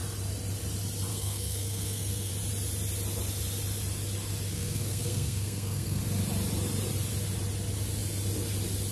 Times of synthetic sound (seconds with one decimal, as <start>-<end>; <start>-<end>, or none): 1.1-2.3; 4.5-6.0